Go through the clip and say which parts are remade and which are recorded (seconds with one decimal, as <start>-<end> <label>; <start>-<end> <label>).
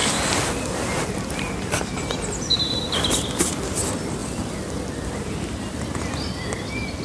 0.0-7.0 recorded